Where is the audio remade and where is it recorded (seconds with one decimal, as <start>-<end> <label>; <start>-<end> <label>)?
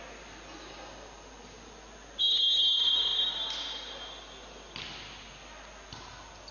0.0-6.5 recorded